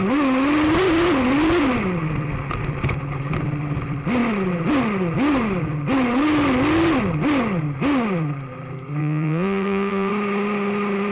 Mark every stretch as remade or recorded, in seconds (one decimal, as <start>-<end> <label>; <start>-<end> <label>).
0.0-9.0 recorded; 9.0-10.1 remade; 10.1-11.1 recorded